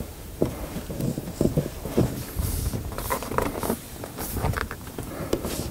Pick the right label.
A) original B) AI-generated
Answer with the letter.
B